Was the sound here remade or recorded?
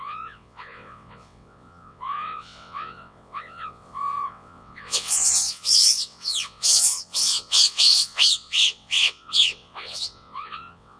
remade